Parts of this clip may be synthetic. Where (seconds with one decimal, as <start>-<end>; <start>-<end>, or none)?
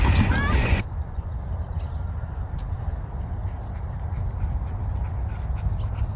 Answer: 0.6-1.3